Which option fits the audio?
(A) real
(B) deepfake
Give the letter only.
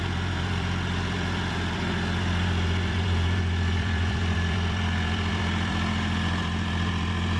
B